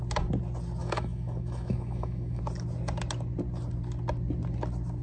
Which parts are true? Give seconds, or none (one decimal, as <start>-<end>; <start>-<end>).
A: 0.0-0.8; 2.4-5.0